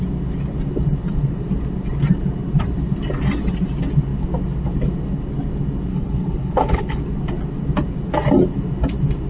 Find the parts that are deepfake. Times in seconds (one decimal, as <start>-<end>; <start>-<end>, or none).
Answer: 5.9-7.0